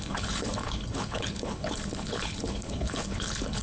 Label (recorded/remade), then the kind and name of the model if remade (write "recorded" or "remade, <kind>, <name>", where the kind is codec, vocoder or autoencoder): remade, codec, HILCodec